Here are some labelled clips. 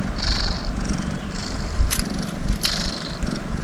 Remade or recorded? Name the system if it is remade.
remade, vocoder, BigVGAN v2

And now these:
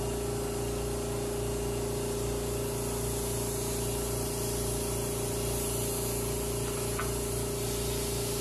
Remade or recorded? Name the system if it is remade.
recorded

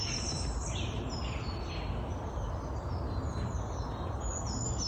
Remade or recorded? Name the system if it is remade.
recorded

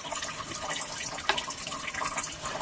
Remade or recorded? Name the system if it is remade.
recorded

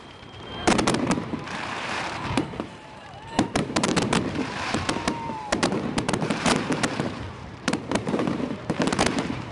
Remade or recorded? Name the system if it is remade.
remade, vocoder, BigVGAN v2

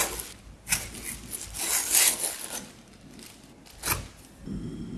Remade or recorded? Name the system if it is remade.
recorded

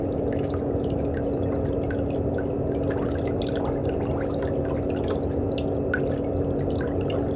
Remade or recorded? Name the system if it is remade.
recorded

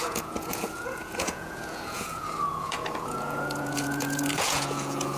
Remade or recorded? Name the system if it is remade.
remade, vocoder, Vocos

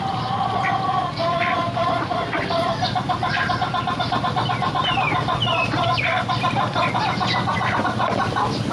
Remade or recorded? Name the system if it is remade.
recorded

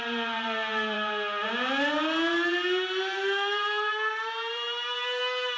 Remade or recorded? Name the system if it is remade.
remade, vocoder, BigVGAN v2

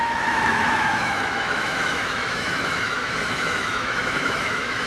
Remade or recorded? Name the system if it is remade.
remade, autoencoder, DAC-VAE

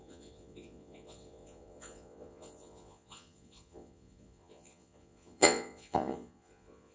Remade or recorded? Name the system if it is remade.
remade, vocoder, Vocos